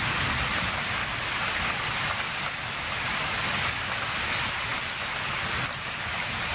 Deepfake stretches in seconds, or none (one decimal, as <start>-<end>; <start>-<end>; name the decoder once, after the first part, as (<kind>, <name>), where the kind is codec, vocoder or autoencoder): none